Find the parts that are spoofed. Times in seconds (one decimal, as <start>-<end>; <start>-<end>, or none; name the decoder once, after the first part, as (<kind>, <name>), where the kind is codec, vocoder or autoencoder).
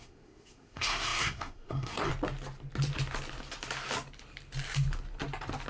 0.0-2.1 (codec, SNAC)